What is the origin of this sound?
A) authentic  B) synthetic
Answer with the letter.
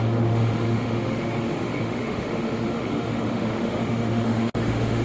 B